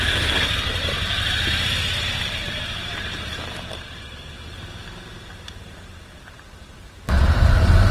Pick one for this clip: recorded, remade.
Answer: remade